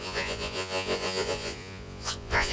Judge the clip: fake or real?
fake